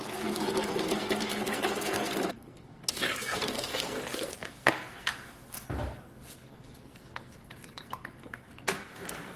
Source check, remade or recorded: remade